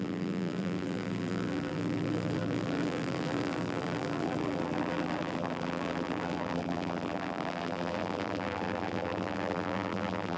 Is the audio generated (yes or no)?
yes